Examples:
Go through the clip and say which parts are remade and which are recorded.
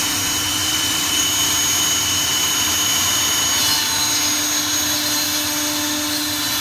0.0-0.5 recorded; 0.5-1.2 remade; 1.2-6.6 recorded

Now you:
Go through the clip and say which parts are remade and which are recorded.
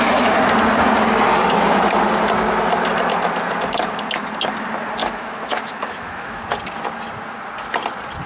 0.0-5.0 recorded; 5.0-6.4 remade; 6.4-8.3 recorded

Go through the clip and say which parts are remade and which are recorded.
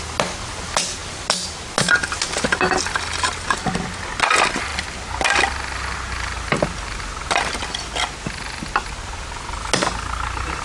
0.0-10.6 recorded